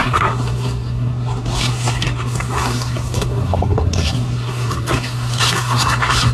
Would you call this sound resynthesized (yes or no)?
yes